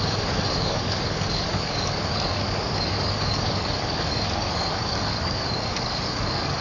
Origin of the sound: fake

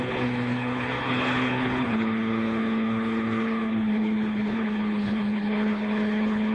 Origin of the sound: fake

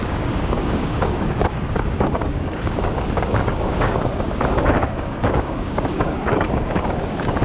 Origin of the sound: fake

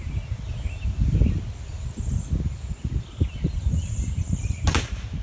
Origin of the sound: real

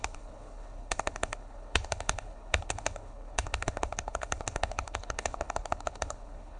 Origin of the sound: fake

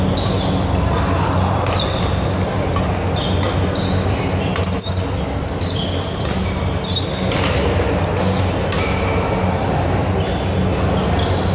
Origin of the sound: real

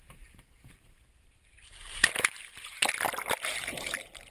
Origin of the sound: fake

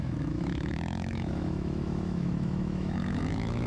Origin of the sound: fake